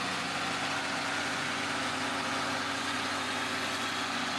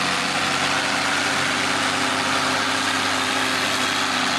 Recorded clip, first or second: second